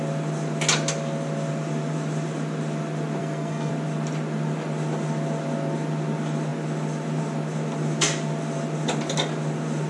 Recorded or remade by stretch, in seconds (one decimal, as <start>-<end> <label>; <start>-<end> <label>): 0.0-3.2 recorded; 3.2-3.7 remade; 3.7-9.9 recorded